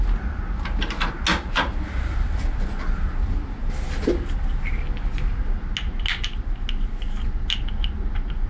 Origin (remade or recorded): recorded